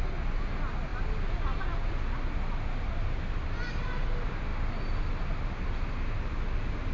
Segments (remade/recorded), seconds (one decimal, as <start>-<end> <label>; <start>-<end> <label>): 0.0-6.9 recorded